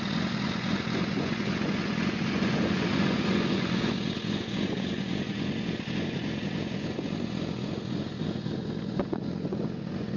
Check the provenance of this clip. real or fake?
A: fake